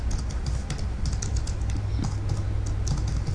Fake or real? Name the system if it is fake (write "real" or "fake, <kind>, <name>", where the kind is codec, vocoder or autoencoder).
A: real